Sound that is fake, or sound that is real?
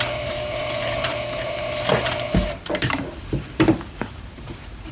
fake